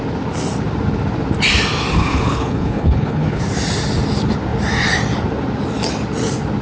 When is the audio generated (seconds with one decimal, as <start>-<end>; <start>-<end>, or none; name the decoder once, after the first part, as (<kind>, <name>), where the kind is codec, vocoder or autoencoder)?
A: 1.9-3.4 (codec, HILCodec)